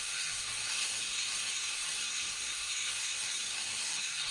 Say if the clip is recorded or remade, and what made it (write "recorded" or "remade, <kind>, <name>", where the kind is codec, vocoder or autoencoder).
remade, codec, SNAC